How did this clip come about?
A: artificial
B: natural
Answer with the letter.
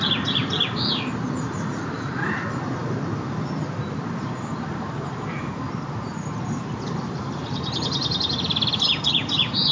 A